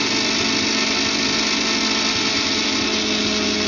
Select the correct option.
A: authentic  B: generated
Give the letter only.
A